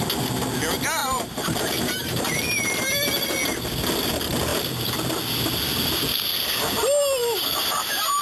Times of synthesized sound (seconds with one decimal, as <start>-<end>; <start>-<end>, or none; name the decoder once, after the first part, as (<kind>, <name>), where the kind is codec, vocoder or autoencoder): 1.0-2.9 (vocoder, BigVGAN v2); 7.2-8.2